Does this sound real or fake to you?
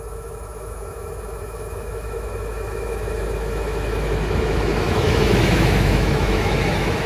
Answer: fake